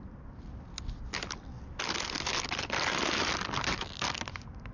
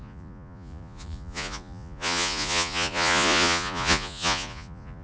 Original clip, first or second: first